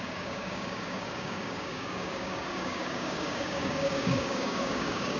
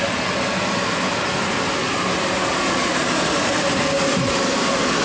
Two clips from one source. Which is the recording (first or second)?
second